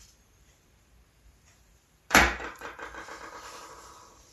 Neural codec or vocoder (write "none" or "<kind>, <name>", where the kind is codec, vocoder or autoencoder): vocoder, BigVGAN v2